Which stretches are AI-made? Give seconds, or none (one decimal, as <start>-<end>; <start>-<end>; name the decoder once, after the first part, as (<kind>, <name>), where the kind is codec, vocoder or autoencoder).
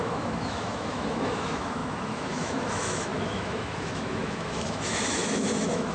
0.0-5.9 (autoencoder, DAC-VAE)